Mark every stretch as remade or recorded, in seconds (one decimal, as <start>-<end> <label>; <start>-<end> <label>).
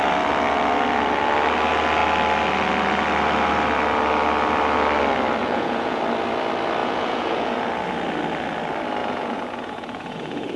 0.0-5.4 recorded; 5.4-6.0 remade; 6.0-6.8 recorded; 6.8-7.7 remade; 7.7-9.0 recorded; 9.0-10.6 remade